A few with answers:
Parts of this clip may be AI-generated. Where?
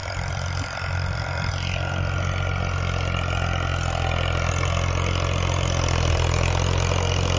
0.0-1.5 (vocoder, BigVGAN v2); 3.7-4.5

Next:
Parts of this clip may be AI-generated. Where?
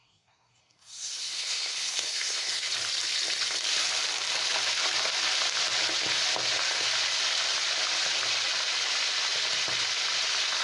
0.0-2.7 (codec, SNAC)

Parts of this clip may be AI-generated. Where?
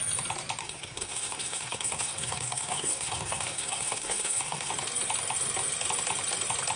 0.6-4.7 (codec, SNAC)